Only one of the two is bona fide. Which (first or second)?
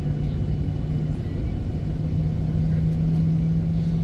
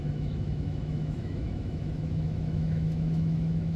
first